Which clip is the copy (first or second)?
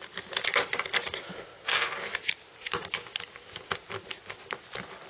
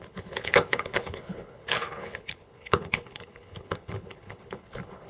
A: second